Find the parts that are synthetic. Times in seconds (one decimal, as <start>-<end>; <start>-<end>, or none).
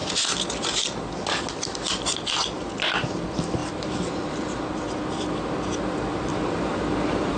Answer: 3.6-4.8; 6.3-6.9